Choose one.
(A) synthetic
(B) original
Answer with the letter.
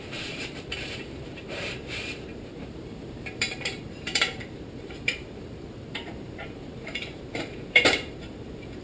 A